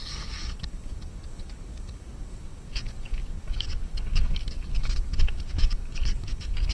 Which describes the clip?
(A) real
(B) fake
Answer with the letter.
B